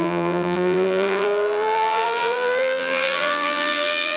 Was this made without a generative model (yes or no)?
no